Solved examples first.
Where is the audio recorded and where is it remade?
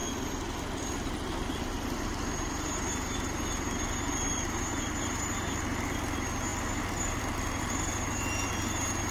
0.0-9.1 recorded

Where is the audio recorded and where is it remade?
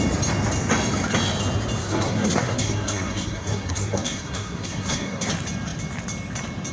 0.0-1.8 recorded; 1.8-5.3 remade; 5.3-6.7 recorded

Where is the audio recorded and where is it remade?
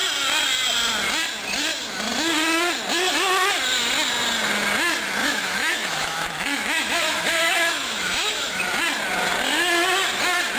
0.0-5.2 recorded; 5.2-8.6 remade; 8.6-10.6 recorded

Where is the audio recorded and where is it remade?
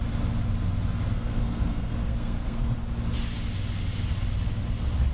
0.0-1.1 recorded; 1.1-2.8 remade; 2.8-5.1 recorded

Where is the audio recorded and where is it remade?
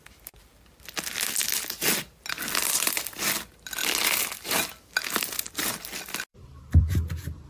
0.0-6.3 recorded; 6.3-6.8 remade; 6.8-7.5 recorded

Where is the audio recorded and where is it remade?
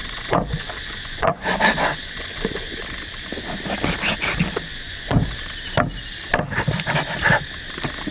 0.0-2.8 remade; 2.8-4.7 recorded; 4.7-5.4 remade; 5.4-8.1 recorded